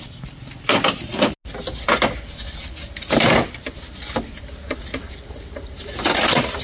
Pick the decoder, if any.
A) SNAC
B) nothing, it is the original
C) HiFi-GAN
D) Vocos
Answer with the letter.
B